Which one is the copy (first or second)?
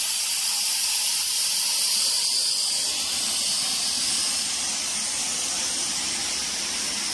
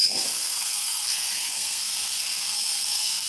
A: second